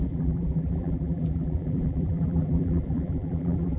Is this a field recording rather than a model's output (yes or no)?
no